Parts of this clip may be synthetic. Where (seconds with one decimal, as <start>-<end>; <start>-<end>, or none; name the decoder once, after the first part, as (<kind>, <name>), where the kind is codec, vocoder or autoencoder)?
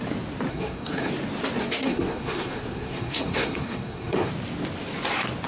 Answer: 0.5-1.1 (codec, SNAC); 1.6-4.3